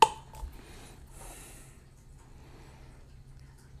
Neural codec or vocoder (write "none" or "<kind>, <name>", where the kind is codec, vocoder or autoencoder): none